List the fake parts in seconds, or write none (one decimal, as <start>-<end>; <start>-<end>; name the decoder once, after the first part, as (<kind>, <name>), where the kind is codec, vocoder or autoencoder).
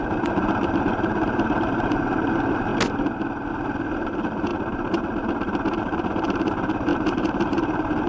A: 0.0-2.7 (vocoder, BigVGAN v2); 3.5-4.5; 5.8-8.1